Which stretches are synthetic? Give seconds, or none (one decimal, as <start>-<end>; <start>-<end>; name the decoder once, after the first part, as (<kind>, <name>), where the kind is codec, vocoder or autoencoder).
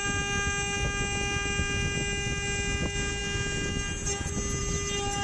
none